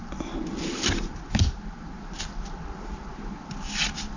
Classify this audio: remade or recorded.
recorded